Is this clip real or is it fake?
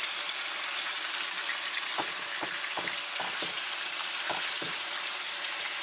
real